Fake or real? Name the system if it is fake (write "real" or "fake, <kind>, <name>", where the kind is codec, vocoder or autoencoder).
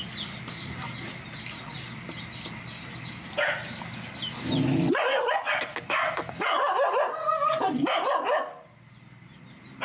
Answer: real